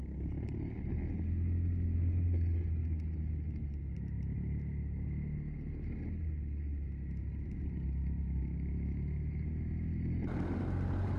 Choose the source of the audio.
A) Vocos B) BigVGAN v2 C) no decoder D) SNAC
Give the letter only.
C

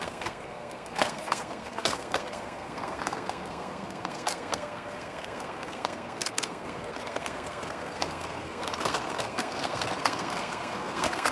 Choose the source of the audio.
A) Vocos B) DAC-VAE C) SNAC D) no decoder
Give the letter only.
C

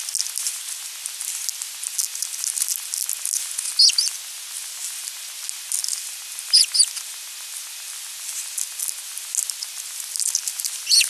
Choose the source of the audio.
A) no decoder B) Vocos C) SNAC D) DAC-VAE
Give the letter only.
A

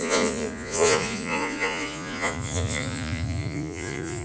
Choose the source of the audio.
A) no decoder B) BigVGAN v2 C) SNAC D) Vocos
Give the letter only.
D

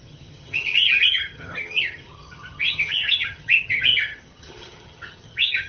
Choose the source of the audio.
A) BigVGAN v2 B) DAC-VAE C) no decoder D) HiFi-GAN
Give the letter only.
D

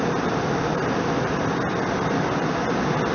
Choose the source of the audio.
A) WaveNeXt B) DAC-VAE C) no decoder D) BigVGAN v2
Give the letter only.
C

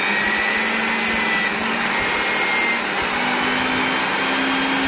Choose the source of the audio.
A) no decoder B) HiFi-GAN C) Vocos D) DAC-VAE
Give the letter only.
A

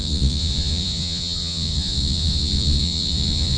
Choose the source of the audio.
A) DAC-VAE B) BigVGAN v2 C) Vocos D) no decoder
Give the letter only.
C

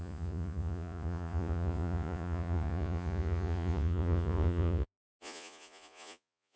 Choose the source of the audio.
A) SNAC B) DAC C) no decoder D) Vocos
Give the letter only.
D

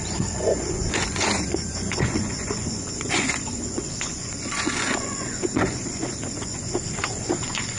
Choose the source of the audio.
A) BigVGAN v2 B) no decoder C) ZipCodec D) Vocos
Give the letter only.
D